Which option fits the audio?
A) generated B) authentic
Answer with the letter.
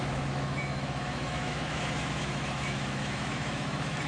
A